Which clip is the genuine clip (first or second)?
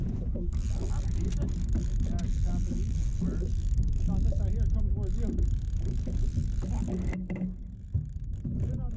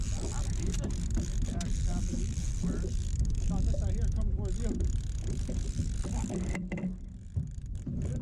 first